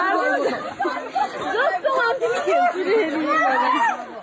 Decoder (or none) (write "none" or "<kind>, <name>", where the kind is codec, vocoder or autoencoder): none